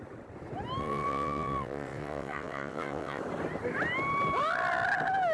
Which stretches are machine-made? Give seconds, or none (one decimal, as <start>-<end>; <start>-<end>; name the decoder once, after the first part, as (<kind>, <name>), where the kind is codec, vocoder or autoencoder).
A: 0.8-3.2 (vocoder, WaveNeXt)